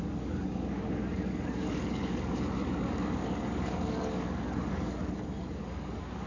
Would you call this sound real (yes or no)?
no